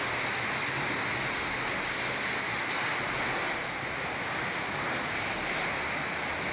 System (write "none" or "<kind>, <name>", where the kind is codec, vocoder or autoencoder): none